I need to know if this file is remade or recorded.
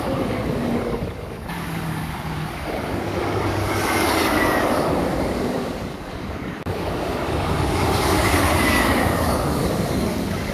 remade